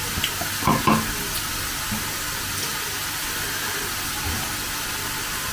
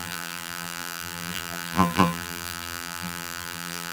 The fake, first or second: second